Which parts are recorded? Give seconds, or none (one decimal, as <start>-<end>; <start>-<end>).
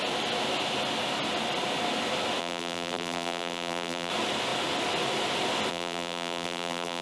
0.0-2.4; 4.1-5.7